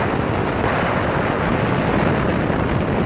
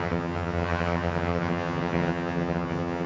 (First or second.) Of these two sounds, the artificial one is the second